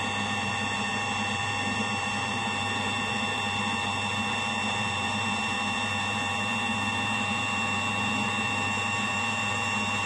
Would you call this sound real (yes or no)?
no